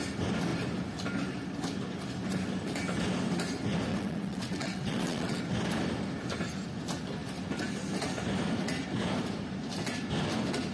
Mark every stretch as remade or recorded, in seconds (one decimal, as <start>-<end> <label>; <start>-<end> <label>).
0.0-3.9 recorded; 3.9-5.4 remade; 5.4-10.7 recorded